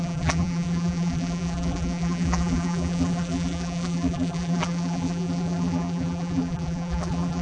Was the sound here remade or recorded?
remade